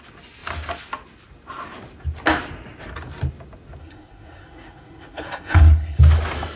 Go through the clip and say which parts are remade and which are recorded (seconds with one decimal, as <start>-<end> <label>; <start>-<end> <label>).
0.0-3.8 recorded; 3.8-6.0 remade; 6.0-6.6 recorded